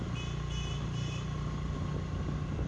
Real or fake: real